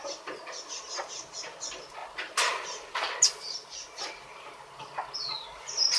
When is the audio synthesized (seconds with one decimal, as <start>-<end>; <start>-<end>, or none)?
none